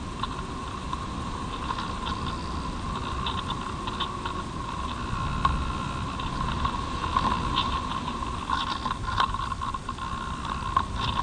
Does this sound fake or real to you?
real